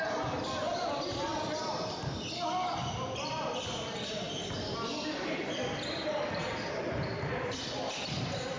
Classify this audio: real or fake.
real